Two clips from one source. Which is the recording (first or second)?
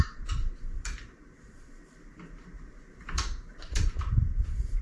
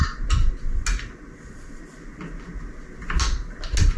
second